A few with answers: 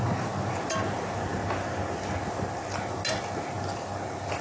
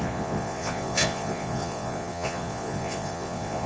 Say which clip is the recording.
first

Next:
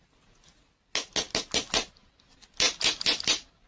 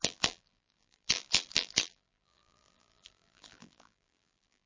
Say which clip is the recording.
first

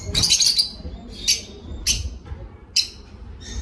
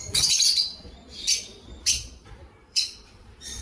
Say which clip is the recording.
first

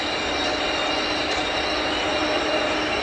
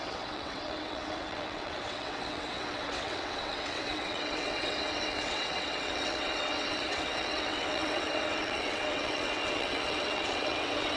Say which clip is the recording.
first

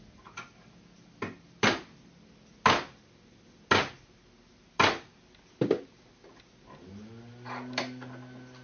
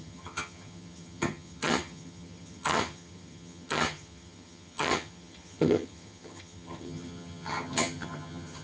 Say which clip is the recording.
first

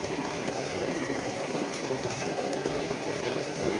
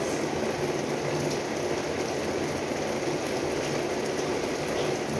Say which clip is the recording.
second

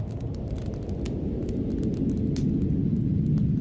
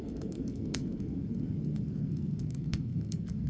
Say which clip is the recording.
first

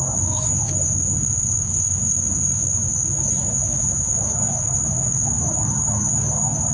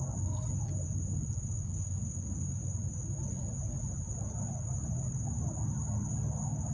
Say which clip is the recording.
second